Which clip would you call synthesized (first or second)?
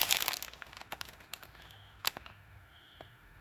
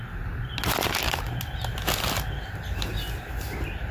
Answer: first